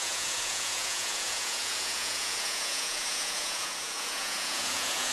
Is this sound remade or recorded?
remade